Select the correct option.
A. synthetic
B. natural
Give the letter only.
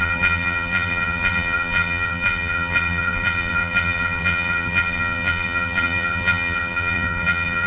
A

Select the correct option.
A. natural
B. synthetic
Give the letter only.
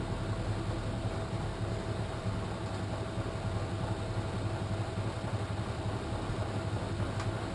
A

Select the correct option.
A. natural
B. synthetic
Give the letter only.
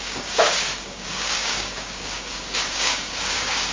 B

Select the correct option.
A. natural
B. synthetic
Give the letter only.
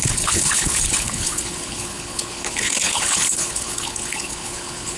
B